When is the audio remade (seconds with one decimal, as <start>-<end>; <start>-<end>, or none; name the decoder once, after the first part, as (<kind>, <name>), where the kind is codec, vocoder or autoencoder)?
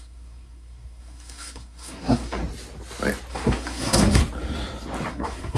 0.0-2.4 (codec, SNAC); 3.3-4.2; 5.1-5.6